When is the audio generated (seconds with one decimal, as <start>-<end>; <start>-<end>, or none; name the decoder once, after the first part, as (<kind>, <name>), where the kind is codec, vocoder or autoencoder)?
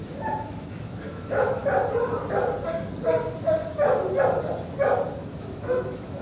0.0-1.6 (autoencoder, DAC-VAE); 5.3-6.2